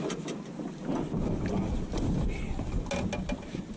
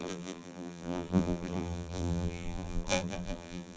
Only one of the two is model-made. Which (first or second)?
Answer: second